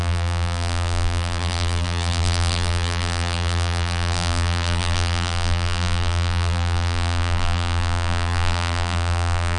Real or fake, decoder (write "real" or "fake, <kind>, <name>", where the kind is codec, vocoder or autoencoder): fake, vocoder, BigVGAN v2